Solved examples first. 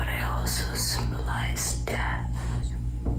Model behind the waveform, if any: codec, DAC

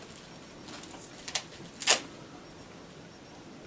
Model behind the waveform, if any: none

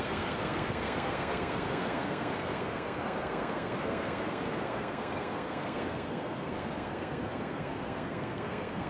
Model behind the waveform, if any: codec, SNAC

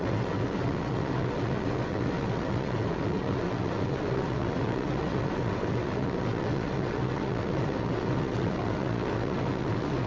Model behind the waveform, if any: vocoder, WaveNeXt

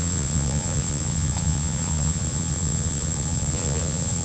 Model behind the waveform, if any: vocoder, Vocos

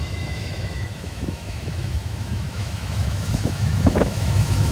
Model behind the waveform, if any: autoencoder, DAC-VAE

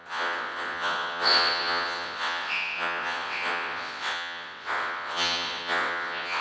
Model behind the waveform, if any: vocoder, WaveNeXt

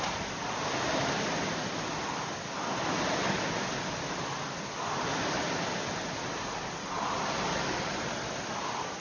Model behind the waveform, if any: none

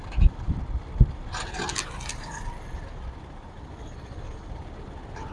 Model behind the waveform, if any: none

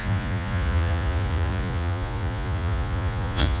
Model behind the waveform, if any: vocoder, Vocos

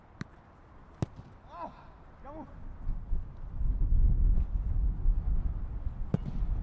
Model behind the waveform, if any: none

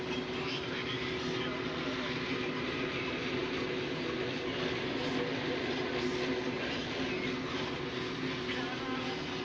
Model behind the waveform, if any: none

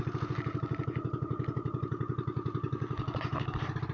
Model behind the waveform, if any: none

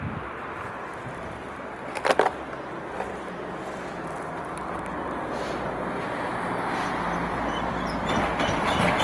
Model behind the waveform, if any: none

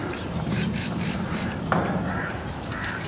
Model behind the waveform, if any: vocoder, BigVGAN v2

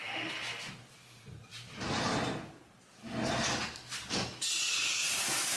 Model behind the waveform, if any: vocoder, BigVGAN v2